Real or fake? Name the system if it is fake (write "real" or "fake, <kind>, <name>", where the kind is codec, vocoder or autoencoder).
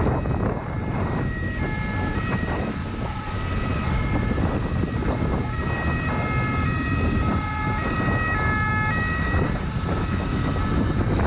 real